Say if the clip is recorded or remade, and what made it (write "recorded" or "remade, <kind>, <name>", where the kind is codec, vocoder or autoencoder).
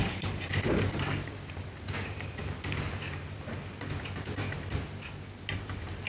recorded